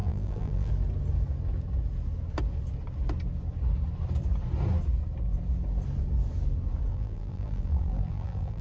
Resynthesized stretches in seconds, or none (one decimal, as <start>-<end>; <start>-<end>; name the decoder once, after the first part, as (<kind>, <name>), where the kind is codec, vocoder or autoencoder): 0.0-0.7 (vocoder, BigVGAN v2); 6.9-8.6